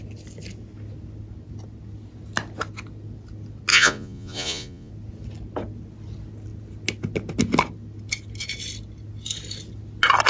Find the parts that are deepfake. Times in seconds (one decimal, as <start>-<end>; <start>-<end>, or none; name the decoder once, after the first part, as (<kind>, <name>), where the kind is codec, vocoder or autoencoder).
3.7-4.9 (vocoder, Vocos)